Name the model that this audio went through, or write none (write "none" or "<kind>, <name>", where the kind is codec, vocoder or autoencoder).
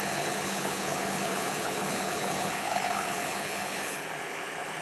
codec, HILCodec